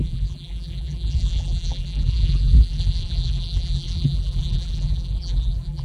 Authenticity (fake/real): fake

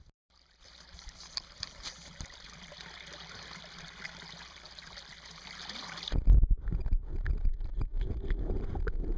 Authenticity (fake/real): fake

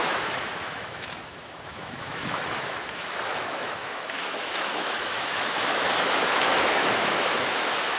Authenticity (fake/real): fake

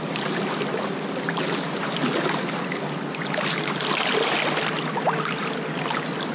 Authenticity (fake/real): real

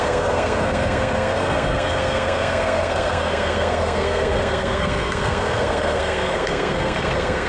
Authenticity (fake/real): fake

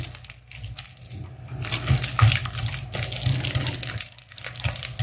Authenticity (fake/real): real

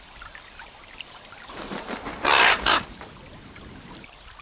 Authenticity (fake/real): fake